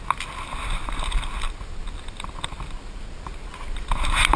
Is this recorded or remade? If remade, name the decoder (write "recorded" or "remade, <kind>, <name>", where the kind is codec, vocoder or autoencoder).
recorded